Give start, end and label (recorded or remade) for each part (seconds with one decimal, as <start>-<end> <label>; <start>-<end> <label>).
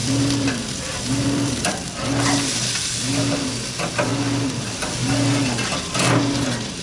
0.0-2.1 remade; 2.1-4.1 recorded; 4.1-4.6 remade; 4.6-6.8 recorded